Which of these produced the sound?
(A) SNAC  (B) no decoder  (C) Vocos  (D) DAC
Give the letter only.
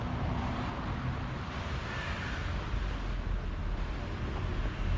B